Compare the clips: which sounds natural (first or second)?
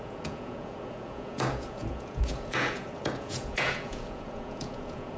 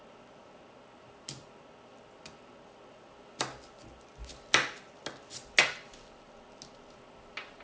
second